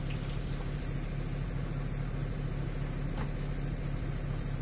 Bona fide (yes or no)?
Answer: yes